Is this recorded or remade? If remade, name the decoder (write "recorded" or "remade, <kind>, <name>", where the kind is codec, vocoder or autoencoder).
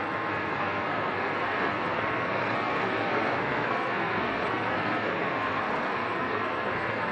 remade, codec, SNAC